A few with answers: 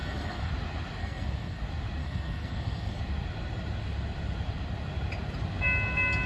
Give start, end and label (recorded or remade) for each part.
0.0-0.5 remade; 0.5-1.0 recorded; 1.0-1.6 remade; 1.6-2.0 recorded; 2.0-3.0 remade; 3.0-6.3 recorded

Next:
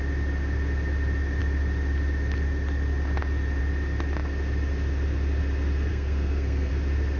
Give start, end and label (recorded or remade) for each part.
0.0-5.9 recorded; 5.9-6.7 remade; 6.7-7.2 recorded

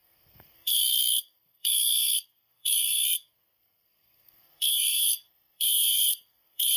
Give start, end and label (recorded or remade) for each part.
0.0-6.8 remade

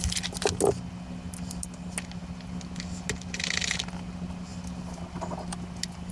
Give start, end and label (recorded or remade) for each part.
0.0-6.1 recorded